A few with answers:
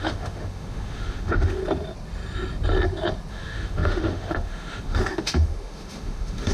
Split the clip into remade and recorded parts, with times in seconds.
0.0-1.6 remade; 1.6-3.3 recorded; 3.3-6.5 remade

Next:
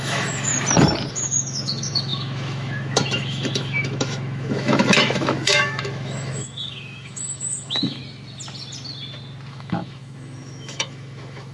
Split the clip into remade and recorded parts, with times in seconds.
0.0-0.5 remade; 0.5-1.1 recorded; 1.1-8.0 remade; 8.0-9.5 recorded; 9.5-11.5 remade